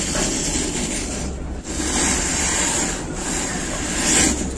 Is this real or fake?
real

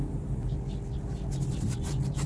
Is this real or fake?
real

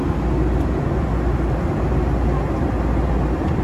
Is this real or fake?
real